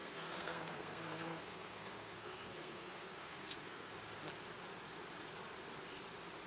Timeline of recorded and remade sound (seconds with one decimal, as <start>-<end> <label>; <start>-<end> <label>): 0.0-3.9 remade; 3.9-6.5 recorded